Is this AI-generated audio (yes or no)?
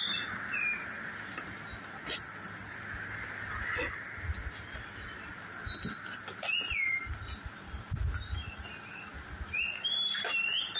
no